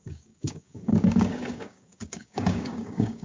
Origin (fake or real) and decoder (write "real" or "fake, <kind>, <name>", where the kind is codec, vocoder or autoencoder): fake, codec, DAC